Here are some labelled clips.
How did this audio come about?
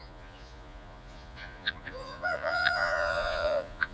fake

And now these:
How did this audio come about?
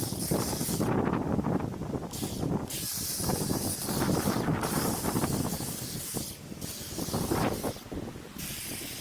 real